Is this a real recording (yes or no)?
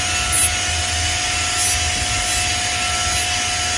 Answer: yes